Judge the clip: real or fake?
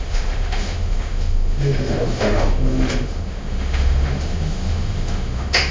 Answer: fake